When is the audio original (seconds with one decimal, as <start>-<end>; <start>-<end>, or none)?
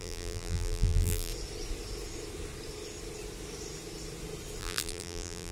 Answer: 1.3-4.6